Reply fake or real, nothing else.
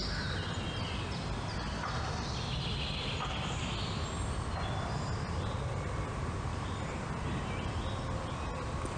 real